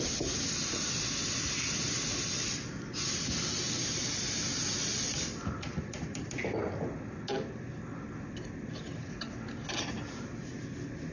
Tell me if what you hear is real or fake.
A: real